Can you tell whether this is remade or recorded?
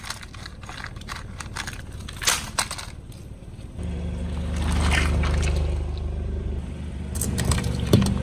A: recorded